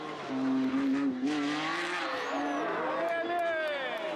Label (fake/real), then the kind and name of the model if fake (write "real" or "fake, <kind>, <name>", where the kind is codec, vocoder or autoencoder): real